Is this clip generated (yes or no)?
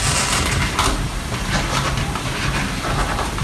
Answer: no